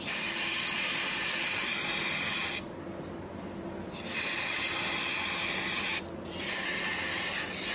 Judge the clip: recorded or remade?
recorded